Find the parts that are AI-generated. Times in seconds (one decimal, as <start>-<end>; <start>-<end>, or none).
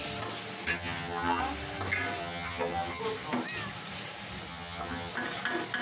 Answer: 0.7-1.4; 2.2-3.0; 4.5-5.1